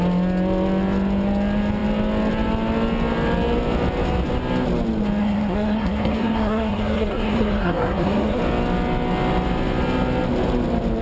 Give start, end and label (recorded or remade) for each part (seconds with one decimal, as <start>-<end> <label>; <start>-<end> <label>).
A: 0.0-5.2 recorded; 5.2-8.4 remade; 8.4-11.0 recorded